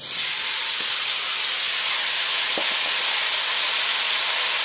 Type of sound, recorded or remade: recorded